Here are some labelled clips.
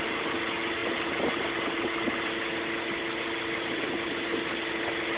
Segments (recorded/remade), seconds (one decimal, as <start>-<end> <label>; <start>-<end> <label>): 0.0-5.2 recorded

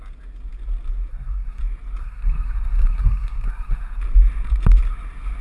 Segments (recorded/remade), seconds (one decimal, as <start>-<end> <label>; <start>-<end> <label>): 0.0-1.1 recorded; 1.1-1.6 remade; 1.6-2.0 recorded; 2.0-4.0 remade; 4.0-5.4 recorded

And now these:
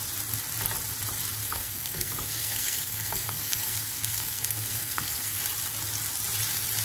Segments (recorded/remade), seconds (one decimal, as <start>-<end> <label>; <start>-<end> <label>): 0.0-1.4 recorded; 1.4-5.4 remade; 5.4-6.8 recorded

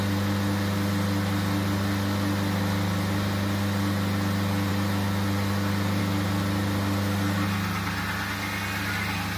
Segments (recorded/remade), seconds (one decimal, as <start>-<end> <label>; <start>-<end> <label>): 0.0-9.4 recorded